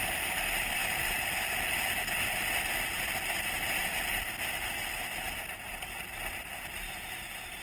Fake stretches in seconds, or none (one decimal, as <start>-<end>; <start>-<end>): 0.8-1.6